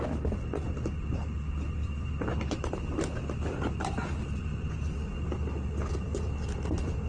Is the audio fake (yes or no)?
no